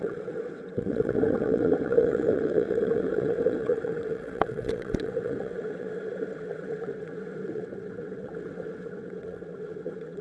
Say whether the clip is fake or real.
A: fake